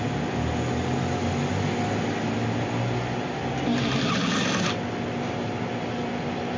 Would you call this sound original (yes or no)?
yes